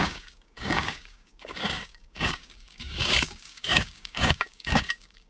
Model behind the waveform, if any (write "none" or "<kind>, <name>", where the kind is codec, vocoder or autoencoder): codec, DAC